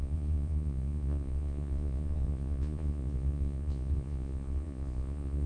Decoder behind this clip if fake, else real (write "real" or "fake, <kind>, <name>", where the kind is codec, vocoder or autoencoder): fake, vocoder, Vocos